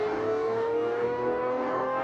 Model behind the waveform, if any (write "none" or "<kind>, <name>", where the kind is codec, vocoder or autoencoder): codec, DAC